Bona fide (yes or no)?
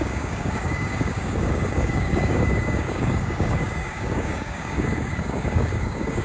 no